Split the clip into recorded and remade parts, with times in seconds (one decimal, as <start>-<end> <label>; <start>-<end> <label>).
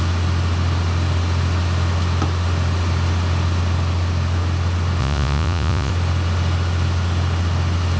0.0-5.0 recorded; 5.0-5.9 remade; 5.9-8.0 recorded